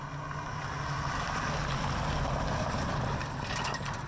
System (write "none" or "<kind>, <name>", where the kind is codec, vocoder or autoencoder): none